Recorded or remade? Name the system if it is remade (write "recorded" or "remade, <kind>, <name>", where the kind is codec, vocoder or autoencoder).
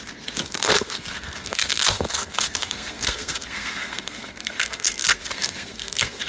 remade, codec, SNAC